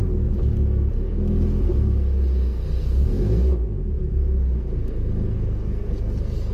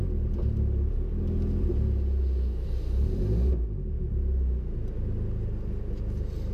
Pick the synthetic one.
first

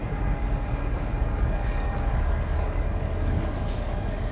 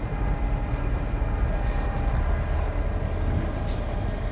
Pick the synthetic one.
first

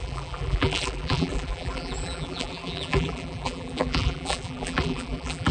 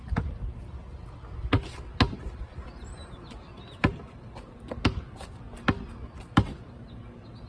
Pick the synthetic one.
first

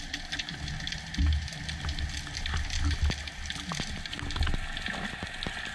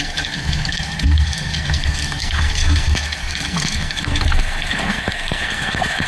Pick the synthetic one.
second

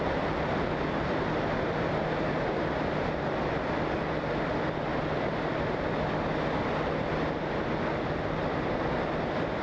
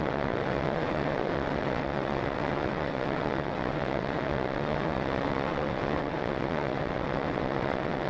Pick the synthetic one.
second